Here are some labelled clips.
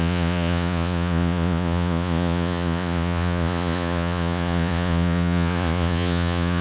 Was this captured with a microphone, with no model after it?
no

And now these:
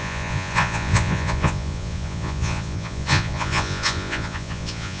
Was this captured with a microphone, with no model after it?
no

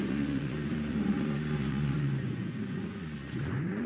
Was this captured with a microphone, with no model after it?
no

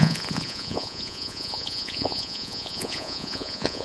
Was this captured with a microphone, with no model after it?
no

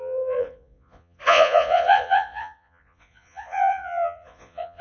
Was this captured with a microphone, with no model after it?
no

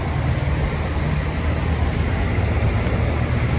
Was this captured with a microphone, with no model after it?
yes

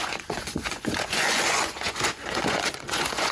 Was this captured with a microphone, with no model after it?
no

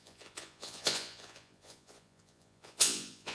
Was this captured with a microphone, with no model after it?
no